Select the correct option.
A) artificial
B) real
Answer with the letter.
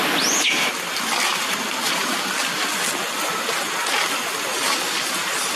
B